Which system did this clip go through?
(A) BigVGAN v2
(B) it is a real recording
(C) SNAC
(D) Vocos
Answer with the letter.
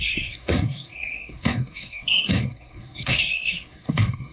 C